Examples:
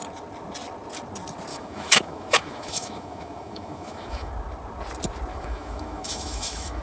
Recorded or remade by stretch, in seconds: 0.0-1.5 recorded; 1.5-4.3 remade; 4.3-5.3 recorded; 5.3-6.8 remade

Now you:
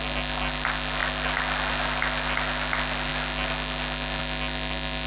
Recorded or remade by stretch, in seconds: 0.0-5.1 recorded

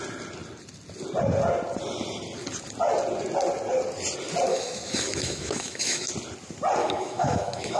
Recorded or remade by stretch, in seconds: 0.0-4.5 recorded; 4.5-6.1 remade; 6.1-6.8 recorded; 6.8-7.8 remade

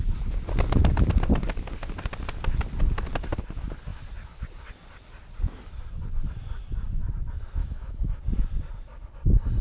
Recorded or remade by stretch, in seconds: 0.0-7.6 recorded; 7.6-8.2 remade; 8.2-9.6 recorded

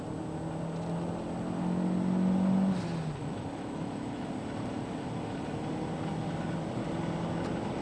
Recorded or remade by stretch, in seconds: 0.0-3.2 recorded; 3.2-4.3 remade; 4.3-7.8 recorded